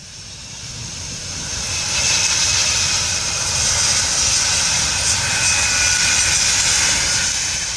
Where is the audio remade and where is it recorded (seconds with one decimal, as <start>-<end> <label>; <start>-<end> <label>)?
0.0-1.8 remade; 1.8-2.6 recorded; 2.6-3.3 remade; 3.3-7.8 recorded